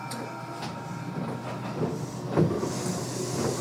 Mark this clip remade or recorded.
recorded